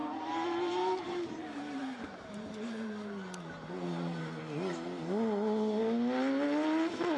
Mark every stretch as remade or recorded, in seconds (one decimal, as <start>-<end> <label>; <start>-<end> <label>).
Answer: 0.0-4.2 remade; 4.2-7.2 recorded